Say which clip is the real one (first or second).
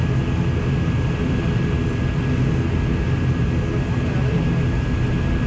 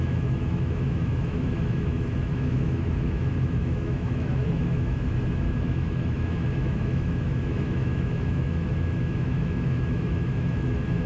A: first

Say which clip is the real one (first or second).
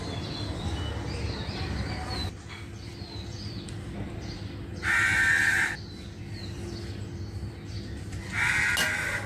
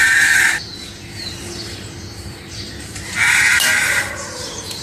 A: first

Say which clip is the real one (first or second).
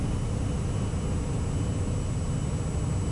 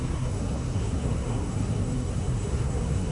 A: first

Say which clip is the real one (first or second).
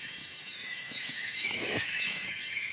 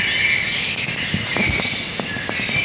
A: second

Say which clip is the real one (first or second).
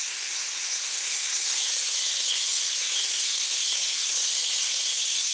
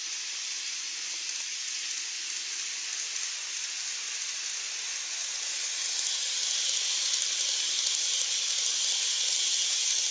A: second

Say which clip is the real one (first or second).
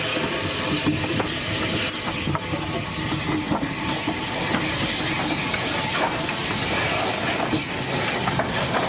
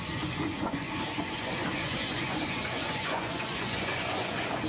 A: first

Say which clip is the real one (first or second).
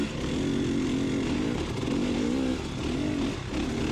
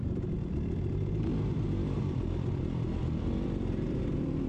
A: first